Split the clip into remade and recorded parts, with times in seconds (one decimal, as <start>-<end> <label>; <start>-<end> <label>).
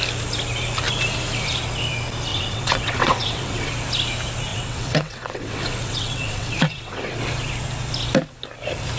0.0-2.3 recorded; 2.3-3.7 remade; 3.7-4.5 recorded; 4.5-7.2 remade; 7.2-9.0 recorded